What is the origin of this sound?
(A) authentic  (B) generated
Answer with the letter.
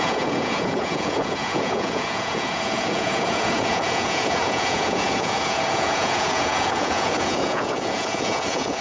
B